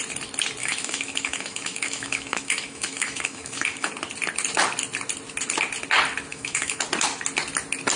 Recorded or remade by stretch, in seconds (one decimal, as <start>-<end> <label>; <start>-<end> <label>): 0.0-0.6 recorded; 0.6-3.9 remade; 3.9-6.3 recorded; 6.3-6.8 remade; 6.8-8.0 recorded